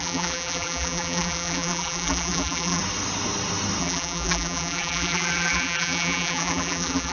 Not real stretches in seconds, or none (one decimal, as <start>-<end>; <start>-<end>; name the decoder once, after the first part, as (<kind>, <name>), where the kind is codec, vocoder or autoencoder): 0.0-2.8 (vocoder, BigVGAN v2); 3.8-7.1